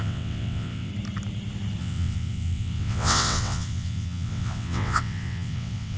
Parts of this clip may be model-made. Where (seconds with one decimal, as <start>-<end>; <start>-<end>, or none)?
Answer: 0.0-0.9; 1.8-6.0